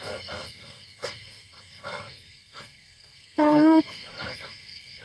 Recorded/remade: remade